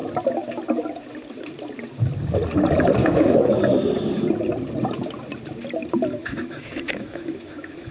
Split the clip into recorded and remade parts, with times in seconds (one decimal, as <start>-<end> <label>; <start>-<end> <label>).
0.0-3.0 recorded; 3.0-3.6 remade; 3.6-6.2 recorded; 6.2-7.9 remade